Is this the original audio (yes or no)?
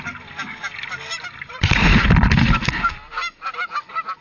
yes